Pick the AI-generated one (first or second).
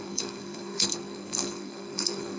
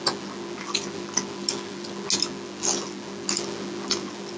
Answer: first